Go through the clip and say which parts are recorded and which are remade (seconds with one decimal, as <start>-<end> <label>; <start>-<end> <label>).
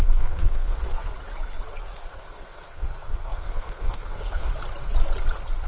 0.0-1.1 remade; 1.1-1.8 recorded; 1.8-4.5 remade; 4.5-5.7 recorded